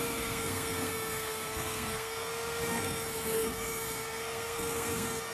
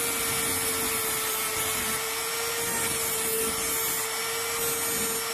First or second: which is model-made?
first